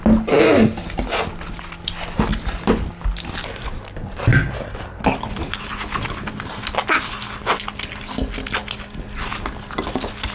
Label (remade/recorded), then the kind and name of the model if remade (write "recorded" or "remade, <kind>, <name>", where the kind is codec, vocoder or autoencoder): recorded